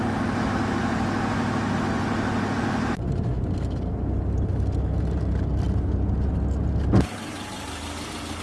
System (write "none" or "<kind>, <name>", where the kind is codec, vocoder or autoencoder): none